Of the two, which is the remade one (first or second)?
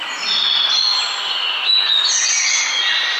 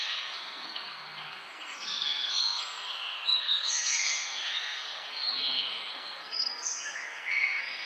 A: second